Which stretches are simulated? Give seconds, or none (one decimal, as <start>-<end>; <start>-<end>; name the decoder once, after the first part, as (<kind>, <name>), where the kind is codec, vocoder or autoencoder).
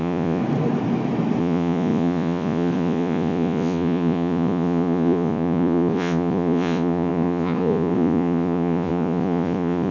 0.0-0.4 (vocoder, Vocos); 1.4-9.9